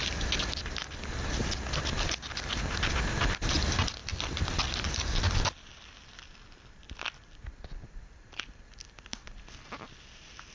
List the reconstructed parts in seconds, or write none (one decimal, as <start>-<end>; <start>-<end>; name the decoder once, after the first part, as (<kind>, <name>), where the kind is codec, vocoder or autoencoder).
none